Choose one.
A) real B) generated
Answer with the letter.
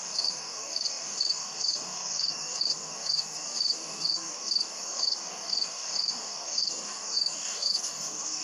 B